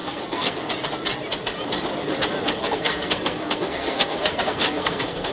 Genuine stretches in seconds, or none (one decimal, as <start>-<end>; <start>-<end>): 0.7-2.6